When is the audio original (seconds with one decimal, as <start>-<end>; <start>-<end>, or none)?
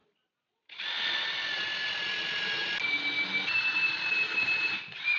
0.0-5.2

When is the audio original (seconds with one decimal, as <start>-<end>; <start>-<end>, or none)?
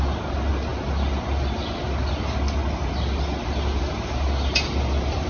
0.0-5.3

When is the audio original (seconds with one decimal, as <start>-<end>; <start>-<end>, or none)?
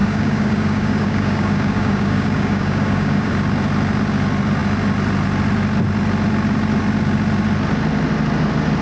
3.3-8.8